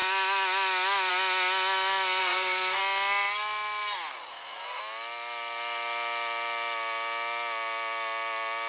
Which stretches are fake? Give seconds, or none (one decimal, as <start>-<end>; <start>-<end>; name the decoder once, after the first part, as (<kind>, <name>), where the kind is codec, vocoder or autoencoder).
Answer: 2.2-2.8 (codec, SNAC); 4.3-4.8